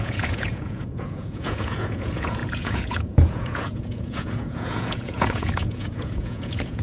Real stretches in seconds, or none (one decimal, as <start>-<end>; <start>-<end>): none